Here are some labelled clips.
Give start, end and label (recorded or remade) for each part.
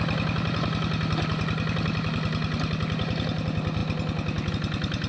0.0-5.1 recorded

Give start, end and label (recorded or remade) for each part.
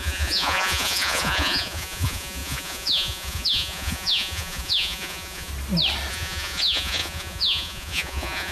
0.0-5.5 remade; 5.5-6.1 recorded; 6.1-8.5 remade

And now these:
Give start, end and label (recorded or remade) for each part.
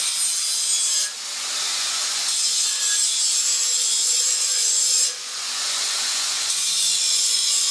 0.0-1.7 recorded; 1.7-2.8 remade; 2.8-3.8 recorded; 3.8-7.7 remade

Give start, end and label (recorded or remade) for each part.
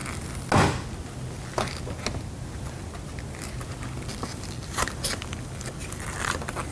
0.0-4.1 recorded; 4.1-6.0 remade; 6.0-6.7 recorded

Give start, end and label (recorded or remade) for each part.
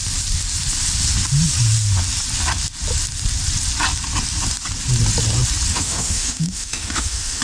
0.0-5.7 recorded; 5.7-7.4 remade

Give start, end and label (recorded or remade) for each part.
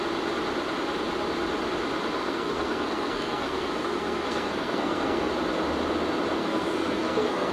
0.0-2.2 recorded; 2.2-5.3 remade; 5.3-6.4 recorded; 6.4-7.5 remade